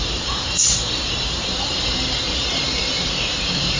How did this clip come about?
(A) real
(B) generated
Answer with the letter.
B